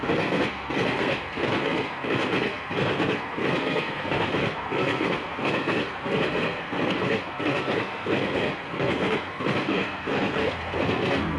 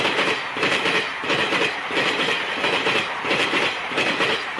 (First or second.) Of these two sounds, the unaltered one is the second